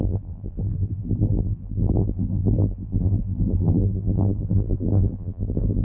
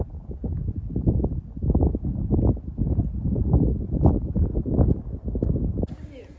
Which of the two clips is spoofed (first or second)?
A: first